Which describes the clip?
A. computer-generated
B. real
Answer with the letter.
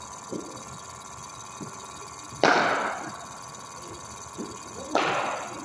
B